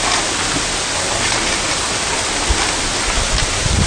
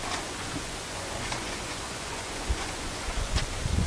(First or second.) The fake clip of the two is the second